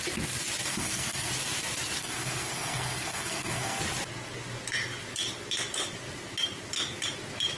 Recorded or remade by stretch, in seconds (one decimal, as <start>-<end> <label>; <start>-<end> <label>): 0.0-0.7 recorded; 0.7-1.3 remade; 1.3-2.0 recorded; 2.0-3.8 remade; 3.8-7.6 recorded